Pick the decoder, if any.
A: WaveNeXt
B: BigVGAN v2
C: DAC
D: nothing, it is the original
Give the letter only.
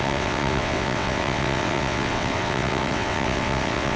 A